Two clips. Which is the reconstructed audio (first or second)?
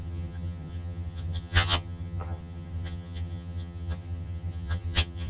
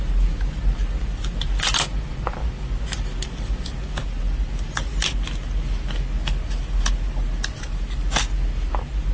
first